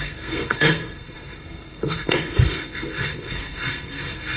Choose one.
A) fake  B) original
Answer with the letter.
A